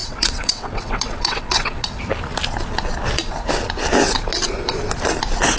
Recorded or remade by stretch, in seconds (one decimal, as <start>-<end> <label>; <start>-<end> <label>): 0.0-1.9 remade; 1.9-5.6 recorded